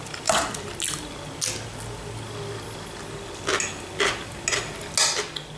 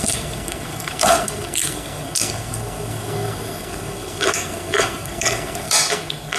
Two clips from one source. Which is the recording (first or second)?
first